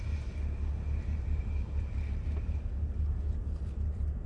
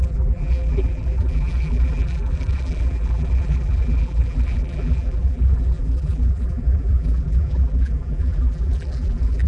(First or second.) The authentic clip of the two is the first